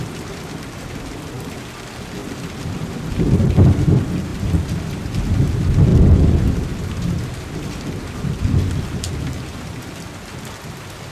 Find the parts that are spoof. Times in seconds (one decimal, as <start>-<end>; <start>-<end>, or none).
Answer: 4.3-5.0